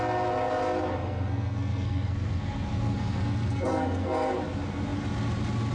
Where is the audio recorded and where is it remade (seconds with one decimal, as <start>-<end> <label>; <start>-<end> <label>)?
0.0-1.0 recorded; 1.0-4.4 remade; 4.4-5.7 recorded